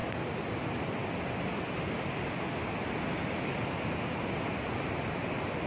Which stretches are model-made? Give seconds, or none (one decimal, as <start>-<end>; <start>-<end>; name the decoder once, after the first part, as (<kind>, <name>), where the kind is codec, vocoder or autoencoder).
none